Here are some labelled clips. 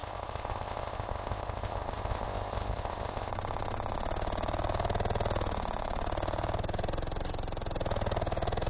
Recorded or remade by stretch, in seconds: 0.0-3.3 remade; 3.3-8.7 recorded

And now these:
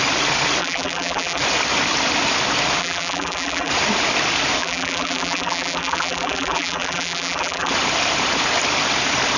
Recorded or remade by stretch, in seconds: 0.0-0.6 recorded; 0.6-1.4 remade; 1.4-2.8 recorded; 2.8-3.7 remade; 3.7-4.6 recorded; 4.6-7.7 remade; 7.7-9.4 recorded

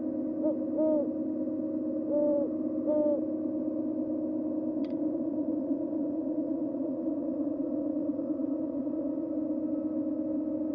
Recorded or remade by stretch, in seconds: 0.0-4.8 recorded; 4.8-9.3 remade; 9.3-10.7 recorded

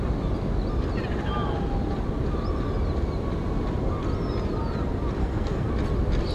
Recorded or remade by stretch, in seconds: 0.0-5.2 recorded; 5.2-5.7 remade; 5.7-6.3 recorded

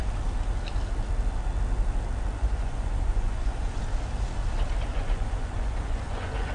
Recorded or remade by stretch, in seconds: 0.0-2.4 recorded; 2.4-3.8 remade; 3.8-4.9 recorded; 4.9-6.5 remade

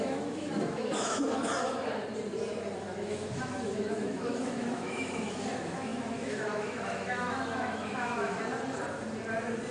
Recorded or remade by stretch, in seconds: 0.0-1.5 remade; 1.5-2.8 recorded; 2.8-8.4 remade; 8.4-9.7 recorded